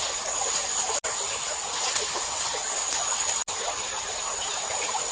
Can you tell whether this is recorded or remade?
recorded